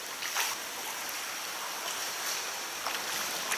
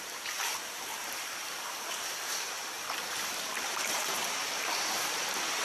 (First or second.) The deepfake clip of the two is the second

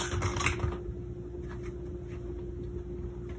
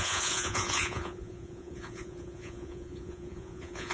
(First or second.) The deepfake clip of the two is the second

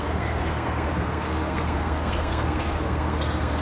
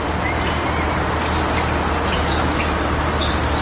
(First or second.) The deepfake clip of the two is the first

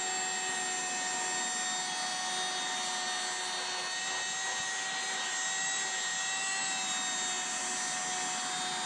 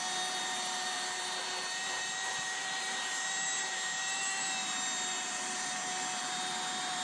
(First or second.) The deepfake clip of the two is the second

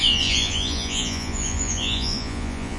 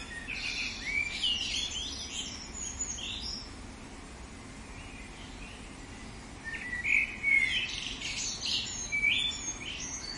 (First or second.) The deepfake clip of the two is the first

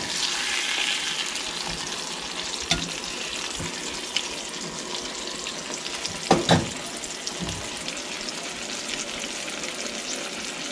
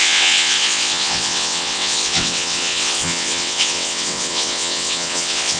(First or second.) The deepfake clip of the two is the second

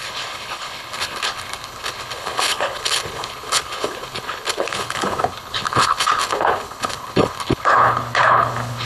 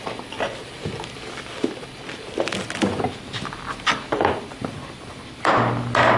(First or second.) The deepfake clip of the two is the first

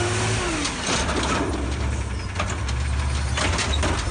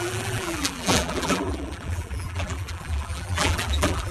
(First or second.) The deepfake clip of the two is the second